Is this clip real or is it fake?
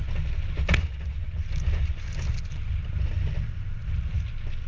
real